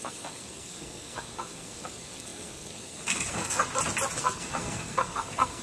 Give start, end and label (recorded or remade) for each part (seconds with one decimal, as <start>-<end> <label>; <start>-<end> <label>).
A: 0.0-3.6 remade; 3.6-4.2 recorded; 4.2-5.6 remade